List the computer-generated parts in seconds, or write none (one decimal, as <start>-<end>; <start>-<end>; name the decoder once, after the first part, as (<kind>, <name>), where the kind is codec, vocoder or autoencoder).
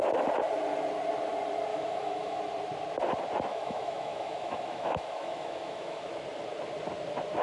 1.7-2.4 (autoencoder, DAC-VAE); 3.5-6.1